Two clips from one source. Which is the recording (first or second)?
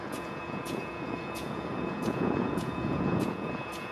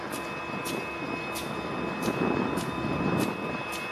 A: second